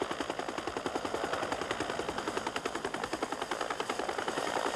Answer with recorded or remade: recorded